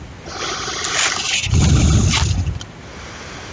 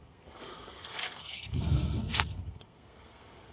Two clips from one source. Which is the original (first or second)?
first